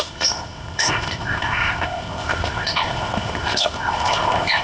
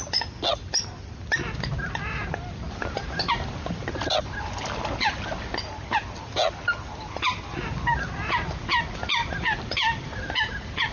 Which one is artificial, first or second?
first